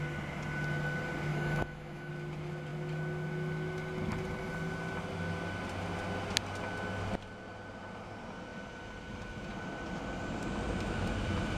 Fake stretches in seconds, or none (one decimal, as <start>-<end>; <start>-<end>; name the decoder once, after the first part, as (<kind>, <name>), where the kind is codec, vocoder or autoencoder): 1.3-2.1 (autoencoder, DAC-VAE)